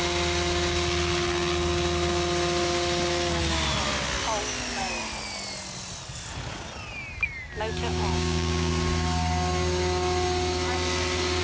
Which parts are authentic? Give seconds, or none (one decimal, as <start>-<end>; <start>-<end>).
0.0-8.1; 8.7-11.4